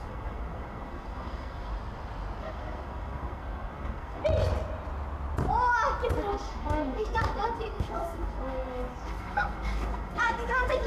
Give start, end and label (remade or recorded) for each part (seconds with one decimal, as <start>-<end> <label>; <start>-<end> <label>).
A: 0.0-1.7 remade; 1.7-2.4 recorded; 2.4-4.2 remade; 4.2-6.3 recorded; 6.3-10.9 remade